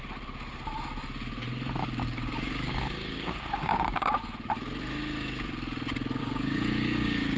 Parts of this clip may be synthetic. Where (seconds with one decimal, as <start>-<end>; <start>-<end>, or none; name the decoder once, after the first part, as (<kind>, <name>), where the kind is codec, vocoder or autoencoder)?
1.8-4.2 (codec, DAC); 6.2-7.4